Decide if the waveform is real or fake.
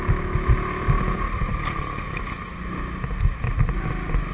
real